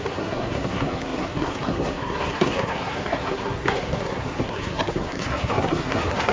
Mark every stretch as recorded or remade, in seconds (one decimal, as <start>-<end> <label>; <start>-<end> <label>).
0.0-6.3 remade